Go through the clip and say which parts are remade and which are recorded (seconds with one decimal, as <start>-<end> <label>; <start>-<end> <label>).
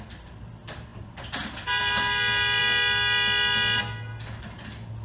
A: 0.0-5.0 recorded